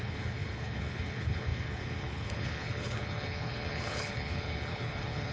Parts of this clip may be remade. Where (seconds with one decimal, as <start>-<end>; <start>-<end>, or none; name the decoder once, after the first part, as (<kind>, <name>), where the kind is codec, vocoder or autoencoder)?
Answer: 0.0-5.3 (codec, HILCodec)